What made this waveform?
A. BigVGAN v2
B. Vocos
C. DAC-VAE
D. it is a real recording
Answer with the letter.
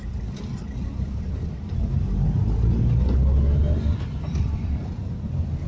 D